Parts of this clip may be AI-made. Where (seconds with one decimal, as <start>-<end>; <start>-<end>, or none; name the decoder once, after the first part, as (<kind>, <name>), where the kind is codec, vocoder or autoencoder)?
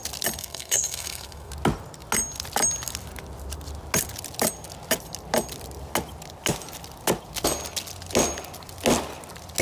0.4-1.5 (codec, SNAC)